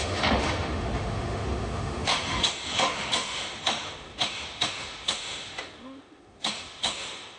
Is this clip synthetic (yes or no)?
yes